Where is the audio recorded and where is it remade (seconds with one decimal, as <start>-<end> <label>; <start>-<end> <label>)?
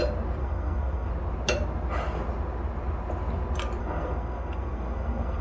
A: 0.0-0.4 recorded; 0.4-1.1 remade; 1.1-3.8 recorded; 3.8-5.4 remade